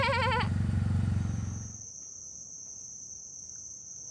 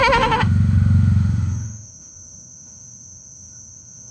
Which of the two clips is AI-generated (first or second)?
second